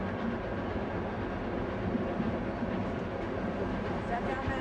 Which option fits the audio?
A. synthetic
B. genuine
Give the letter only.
B